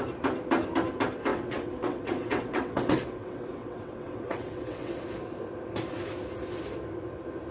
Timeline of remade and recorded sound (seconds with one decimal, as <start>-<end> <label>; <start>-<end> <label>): 0.0-1.3 recorded; 1.3-4.9 remade; 4.9-7.5 recorded